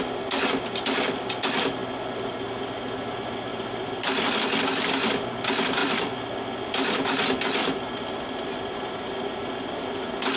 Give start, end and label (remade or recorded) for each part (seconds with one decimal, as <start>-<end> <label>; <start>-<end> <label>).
0.0-3.5 recorded; 3.5-4.3 remade; 4.3-5.8 recorded; 5.8-6.3 remade; 6.3-7.6 recorded; 7.6-10.4 remade